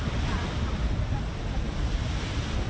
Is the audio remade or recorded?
recorded